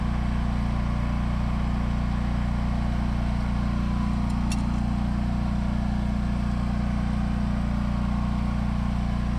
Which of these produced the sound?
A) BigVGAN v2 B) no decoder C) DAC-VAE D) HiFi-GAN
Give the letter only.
B